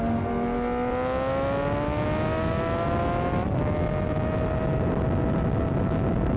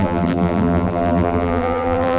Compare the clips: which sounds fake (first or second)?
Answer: second